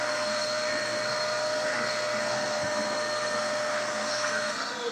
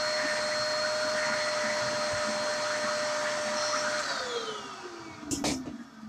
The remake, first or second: first